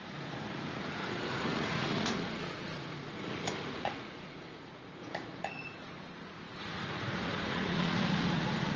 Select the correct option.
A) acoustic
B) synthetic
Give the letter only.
B